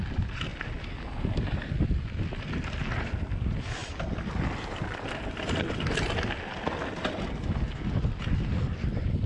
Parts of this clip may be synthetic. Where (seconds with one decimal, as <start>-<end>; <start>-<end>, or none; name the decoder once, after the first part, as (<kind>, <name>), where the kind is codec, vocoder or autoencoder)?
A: none

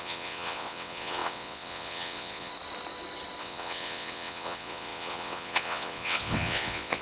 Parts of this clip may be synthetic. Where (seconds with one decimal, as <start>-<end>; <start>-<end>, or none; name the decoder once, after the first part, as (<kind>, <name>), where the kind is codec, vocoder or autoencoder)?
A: 0.0-2.5 (vocoder, WaveNeXt); 3.4-7.0

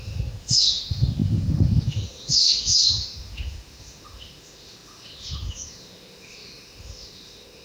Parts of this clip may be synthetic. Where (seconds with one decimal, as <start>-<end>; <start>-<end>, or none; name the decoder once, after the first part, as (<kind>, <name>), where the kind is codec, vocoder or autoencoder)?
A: 0.0-7.6 (autoencoder, DAC-VAE)

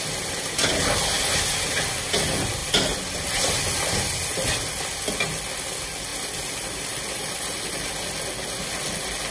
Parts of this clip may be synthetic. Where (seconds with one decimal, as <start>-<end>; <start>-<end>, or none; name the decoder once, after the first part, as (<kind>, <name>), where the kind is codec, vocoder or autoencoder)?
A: 6.1-7.6 (vocoder, BigVGAN v2)

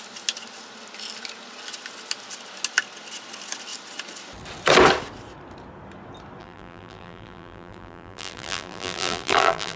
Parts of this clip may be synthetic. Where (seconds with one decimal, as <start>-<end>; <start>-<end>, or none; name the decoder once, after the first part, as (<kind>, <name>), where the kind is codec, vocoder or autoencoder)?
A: 6.4-9.8 (vocoder, BigVGAN v2)

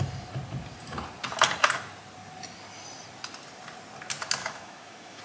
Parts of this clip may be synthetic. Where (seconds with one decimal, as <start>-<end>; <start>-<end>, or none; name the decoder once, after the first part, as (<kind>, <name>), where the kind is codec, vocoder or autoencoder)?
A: 4.4-5.2 (autoencoder, DAC-VAE)

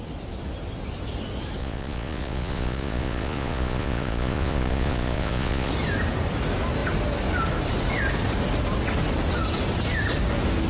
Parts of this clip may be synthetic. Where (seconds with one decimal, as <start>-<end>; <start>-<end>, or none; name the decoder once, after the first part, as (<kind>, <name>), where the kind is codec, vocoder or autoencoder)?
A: 1.6-5.7 (vocoder, Vocos)

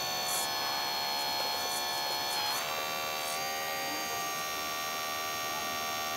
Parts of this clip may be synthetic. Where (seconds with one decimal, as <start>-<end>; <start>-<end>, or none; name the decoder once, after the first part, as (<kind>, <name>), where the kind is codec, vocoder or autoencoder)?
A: none